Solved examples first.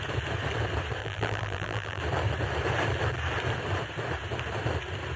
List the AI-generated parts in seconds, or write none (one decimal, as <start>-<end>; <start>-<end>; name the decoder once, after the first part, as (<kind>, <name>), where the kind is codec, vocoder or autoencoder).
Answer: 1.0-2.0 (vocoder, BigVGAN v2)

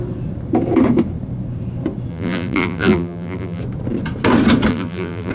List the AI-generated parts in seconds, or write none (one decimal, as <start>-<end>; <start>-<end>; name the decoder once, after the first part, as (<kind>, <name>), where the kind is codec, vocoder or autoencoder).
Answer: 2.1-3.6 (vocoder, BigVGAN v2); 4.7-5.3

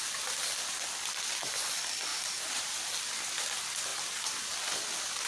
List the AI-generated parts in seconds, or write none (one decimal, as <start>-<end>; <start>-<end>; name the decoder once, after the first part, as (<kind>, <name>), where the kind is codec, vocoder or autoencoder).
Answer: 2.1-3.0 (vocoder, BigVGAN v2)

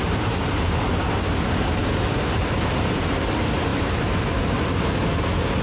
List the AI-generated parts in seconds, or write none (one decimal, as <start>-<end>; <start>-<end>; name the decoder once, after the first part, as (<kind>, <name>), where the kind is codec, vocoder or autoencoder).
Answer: 1.8-3.3 (vocoder, BigVGAN v2)

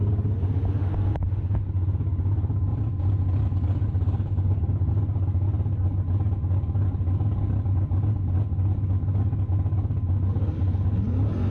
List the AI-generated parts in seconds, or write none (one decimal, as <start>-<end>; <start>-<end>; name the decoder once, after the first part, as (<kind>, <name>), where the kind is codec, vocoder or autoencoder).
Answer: 2.7-4.9 (vocoder, BigVGAN v2)

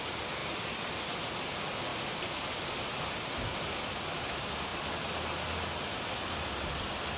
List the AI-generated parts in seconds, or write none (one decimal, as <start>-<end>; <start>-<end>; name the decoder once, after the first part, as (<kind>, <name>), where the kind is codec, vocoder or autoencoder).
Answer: 1.9-3.3 (vocoder, BigVGAN v2)

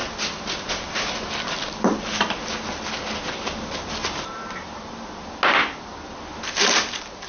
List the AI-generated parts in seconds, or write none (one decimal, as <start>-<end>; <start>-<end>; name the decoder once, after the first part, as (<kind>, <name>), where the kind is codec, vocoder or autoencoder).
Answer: 4.0-4.8 (vocoder, BigVGAN v2)

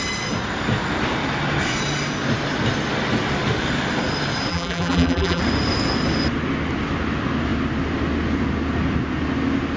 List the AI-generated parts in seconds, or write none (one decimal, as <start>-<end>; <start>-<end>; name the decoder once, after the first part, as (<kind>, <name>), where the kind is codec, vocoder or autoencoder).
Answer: 4.5-5.4 (vocoder, BigVGAN v2)